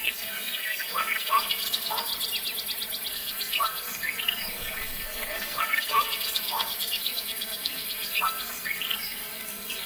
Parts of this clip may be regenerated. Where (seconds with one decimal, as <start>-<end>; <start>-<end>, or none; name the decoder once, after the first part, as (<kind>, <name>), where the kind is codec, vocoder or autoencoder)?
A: 0.0-2.1 (codec, SNAC); 3.1-9.9

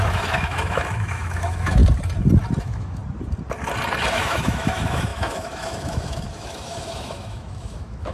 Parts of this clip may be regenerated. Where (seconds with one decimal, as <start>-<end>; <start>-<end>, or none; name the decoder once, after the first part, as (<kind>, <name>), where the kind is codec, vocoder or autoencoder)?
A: 0.0-1.8 (autoencoder, DAC-VAE); 2.6-3.0; 4.1-8.1